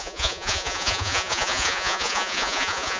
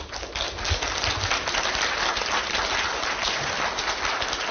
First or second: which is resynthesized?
first